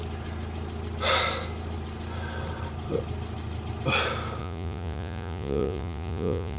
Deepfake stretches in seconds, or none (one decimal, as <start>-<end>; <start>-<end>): 4.4-6.6